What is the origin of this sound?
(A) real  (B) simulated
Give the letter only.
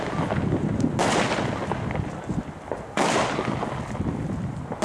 A